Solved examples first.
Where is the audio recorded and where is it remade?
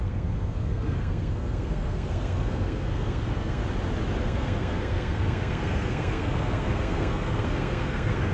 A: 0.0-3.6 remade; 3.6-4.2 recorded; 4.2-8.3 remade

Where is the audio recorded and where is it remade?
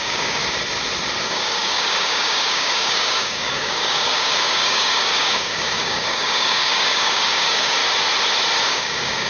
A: 0.0-0.4 remade; 0.4-1.2 recorded; 1.2-7.8 remade; 7.8-8.6 recorded; 8.6-9.3 remade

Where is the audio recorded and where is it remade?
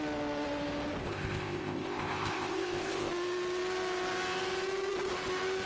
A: 0.0-1.0 recorded; 1.0-3.1 remade; 3.1-5.7 recorded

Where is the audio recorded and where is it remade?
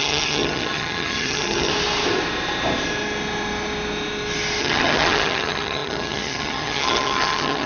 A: 0.0-1.7 remade; 1.7-4.6 recorded; 4.6-7.7 remade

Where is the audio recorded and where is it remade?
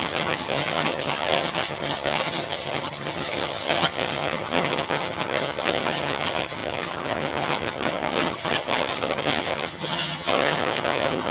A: 0.0-11.3 remade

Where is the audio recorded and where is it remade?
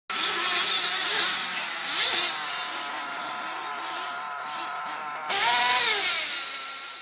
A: 0.0-7.0 recorded